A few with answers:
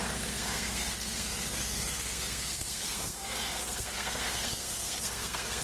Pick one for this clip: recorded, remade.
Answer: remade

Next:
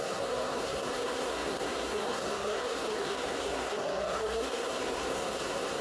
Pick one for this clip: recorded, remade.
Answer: remade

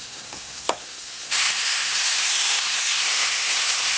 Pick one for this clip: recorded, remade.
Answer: remade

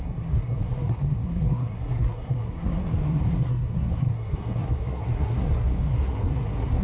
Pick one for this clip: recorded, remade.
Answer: remade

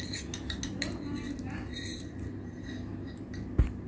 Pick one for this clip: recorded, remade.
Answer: recorded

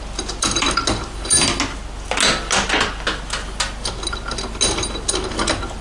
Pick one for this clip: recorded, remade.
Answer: recorded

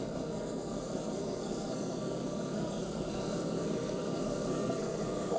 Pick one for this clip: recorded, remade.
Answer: remade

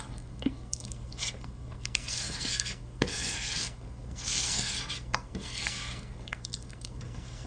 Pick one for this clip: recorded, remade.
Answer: remade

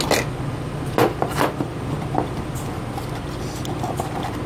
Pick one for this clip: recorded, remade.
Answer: recorded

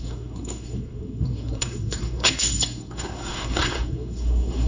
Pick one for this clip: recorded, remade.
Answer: remade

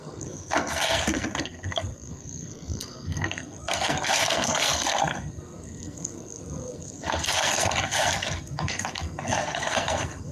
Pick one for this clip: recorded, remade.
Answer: remade